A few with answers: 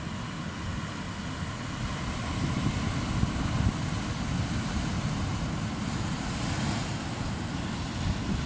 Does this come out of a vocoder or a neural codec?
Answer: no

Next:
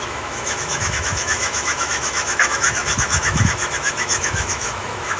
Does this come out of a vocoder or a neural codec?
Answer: yes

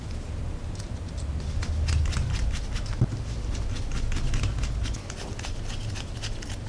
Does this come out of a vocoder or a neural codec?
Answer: no